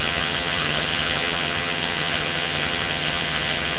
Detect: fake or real fake